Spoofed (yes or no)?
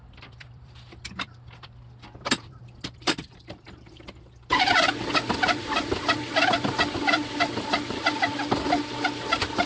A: yes